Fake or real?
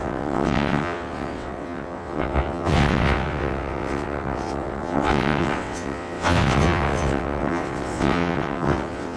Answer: fake